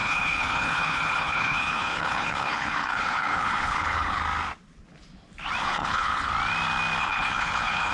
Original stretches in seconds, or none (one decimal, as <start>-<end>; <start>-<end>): 4.2-5.6; 6.3-7.0